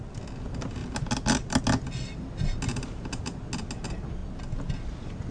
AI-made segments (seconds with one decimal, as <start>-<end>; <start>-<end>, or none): 2.7-3.4